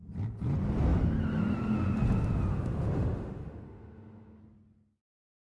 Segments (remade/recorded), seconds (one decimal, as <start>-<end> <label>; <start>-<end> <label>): 0.0-2.5 recorded; 2.5-4.4 remade; 4.4-5.6 recorded